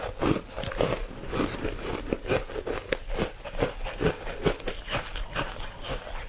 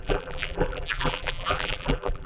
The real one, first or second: first